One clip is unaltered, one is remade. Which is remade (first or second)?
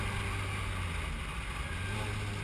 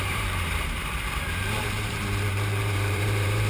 second